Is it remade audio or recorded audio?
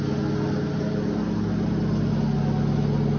recorded